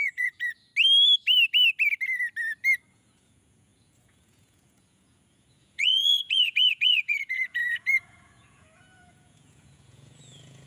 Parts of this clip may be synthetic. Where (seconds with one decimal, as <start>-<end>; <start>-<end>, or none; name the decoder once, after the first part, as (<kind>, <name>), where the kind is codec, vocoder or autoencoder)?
0.0-0.7 (vocoder, Vocos); 2.9-10.7